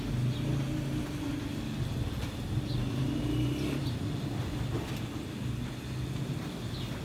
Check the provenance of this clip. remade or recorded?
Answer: recorded